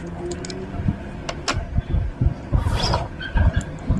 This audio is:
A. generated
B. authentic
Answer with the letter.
B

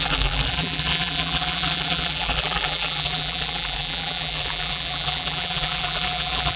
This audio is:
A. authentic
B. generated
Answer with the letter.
B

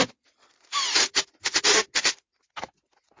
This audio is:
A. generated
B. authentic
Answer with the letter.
B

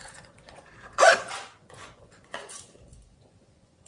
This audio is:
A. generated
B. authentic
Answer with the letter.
A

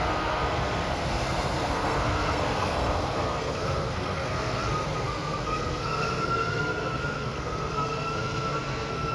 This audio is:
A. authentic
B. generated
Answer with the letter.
B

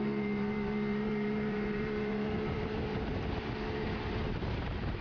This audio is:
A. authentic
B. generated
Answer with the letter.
B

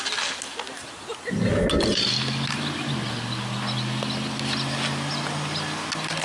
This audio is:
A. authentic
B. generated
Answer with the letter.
A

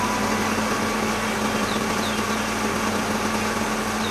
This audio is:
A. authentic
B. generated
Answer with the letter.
A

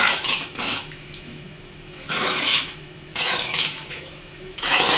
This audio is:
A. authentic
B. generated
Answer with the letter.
B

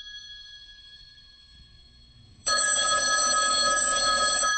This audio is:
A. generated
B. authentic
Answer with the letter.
A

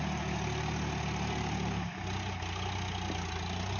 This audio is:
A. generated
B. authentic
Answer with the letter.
B